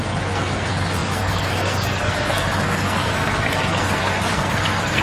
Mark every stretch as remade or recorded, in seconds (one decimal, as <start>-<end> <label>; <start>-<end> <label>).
0.0-5.0 remade